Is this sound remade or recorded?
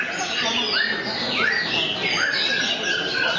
recorded